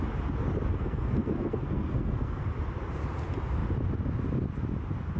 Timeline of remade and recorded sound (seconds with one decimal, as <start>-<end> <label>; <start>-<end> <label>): 0.0-0.7 recorded; 0.7-2.5 remade; 2.5-5.2 recorded

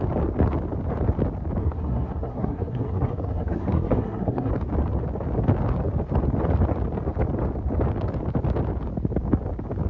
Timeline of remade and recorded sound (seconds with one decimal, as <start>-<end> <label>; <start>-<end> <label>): 0.0-1.6 recorded; 1.6-4.5 remade; 4.5-9.9 recorded

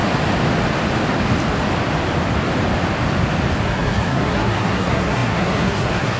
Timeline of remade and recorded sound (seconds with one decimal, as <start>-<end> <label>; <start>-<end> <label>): 0.0-3.6 recorded; 3.6-6.2 remade

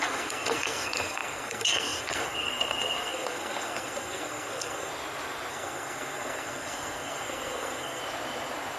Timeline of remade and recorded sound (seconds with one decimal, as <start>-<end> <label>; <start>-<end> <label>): 0.0-4.9 remade; 4.9-5.5 recorded; 5.5-8.0 remade; 8.0-8.8 recorded

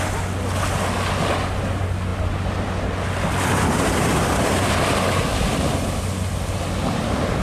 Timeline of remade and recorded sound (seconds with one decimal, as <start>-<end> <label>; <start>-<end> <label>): 0.0-7.4 recorded